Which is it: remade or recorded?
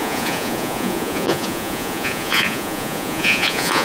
remade